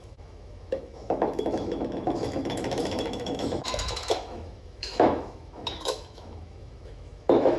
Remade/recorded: remade